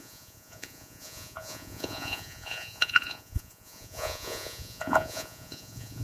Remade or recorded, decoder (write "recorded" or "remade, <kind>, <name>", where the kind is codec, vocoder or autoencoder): remade, vocoder, Vocos